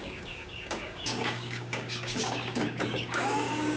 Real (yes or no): no